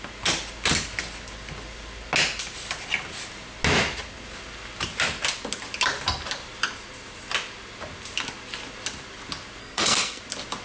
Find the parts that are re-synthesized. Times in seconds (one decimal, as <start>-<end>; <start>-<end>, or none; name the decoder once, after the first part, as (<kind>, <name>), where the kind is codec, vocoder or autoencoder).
9.6-10.2 (codec, SNAC)